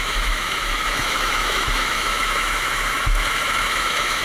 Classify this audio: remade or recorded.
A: remade